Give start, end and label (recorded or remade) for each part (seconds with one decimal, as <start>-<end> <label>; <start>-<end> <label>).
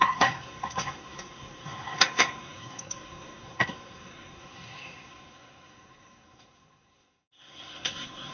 0.0-8.3 remade